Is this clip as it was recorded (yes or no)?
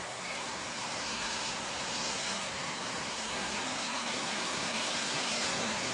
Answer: no